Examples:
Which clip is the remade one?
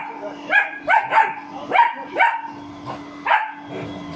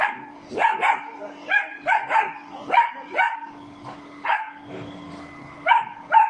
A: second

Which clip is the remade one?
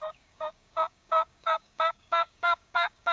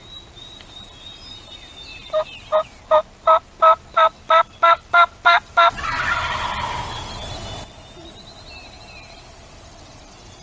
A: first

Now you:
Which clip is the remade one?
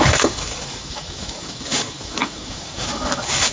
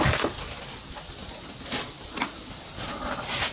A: first